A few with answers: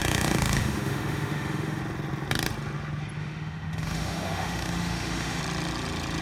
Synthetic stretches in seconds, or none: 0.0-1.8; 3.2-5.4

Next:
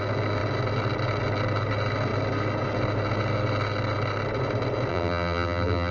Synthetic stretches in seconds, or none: 4.9-5.9

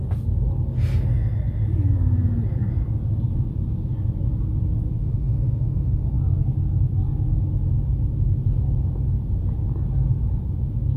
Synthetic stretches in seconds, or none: 5.0-6.2

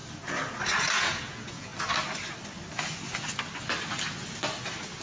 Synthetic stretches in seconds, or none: 1.0-1.7

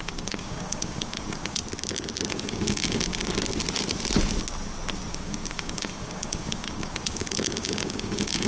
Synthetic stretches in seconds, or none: 0.0-1.6; 2.3-3.1; 5.1-8.5

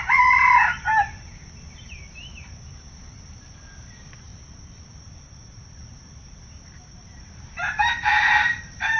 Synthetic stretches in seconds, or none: none

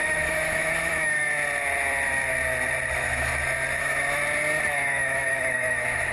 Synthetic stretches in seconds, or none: 0.0-1.3; 2.9-3.3; 3.8-4.2; 4.7-6.1

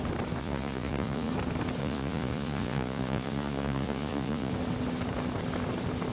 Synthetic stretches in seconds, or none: 0.4-1.3; 1.8-4.5